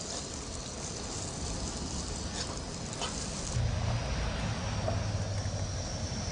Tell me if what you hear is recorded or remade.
recorded